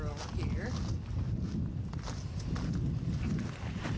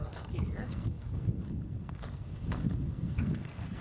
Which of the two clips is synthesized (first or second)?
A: second